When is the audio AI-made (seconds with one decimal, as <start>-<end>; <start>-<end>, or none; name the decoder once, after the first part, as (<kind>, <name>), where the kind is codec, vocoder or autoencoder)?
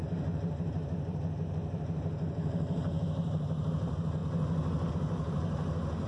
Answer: 0.0-4.2 (vocoder, BigVGAN v2); 4.9-6.1